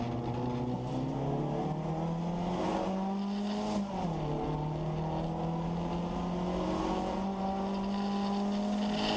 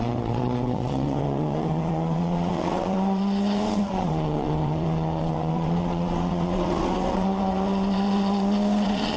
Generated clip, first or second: second